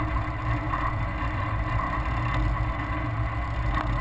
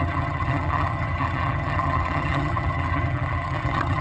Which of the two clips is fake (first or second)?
second